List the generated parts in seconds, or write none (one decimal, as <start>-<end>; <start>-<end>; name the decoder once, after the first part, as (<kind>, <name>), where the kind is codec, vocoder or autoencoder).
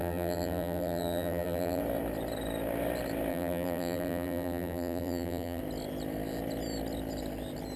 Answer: 0.0-1.8 (vocoder, BigVGAN v2); 3.3-5.6